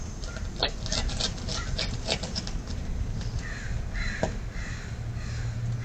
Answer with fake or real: real